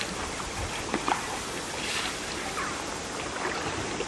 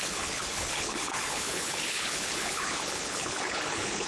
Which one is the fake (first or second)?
second